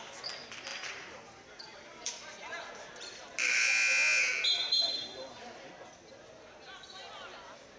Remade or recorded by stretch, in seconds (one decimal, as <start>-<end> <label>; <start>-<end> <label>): 0.0-0.7 recorded; 0.7-3.3 remade; 3.3-4.3 recorded; 4.3-5.7 remade; 5.7-7.8 recorded